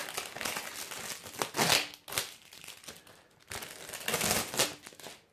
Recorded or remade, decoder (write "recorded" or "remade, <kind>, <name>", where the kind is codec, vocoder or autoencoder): recorded